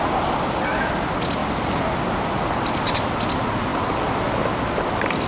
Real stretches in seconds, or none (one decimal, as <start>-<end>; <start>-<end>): 0.0-5.3